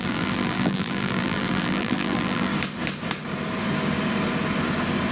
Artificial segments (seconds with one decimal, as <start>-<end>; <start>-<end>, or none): 0.0-2.5